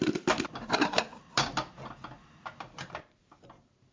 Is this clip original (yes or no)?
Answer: no